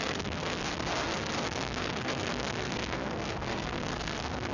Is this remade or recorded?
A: remade